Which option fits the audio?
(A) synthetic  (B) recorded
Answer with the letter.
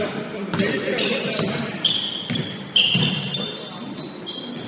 B